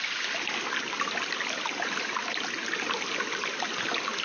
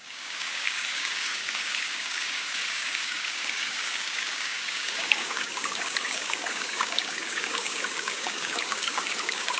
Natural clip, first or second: first